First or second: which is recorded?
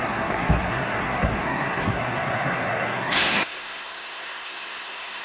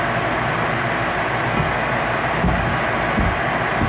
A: second